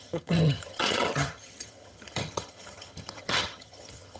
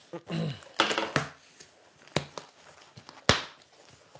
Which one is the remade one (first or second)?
first